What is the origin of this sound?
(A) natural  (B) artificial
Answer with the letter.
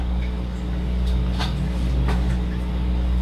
B